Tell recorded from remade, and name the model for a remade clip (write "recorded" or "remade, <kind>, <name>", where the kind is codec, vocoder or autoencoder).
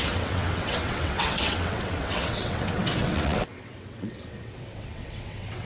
remade, vocoder, WaveNeXt